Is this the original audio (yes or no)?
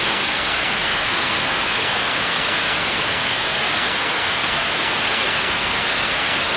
no